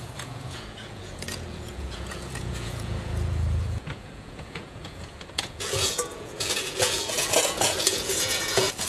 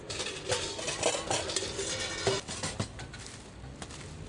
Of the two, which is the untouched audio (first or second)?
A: second